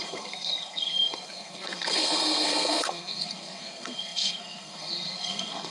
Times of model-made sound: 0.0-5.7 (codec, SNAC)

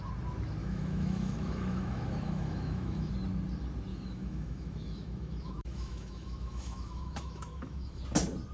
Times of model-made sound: 0.6-3.1 (autoencoder, DAC-VAE); 3.9-8.0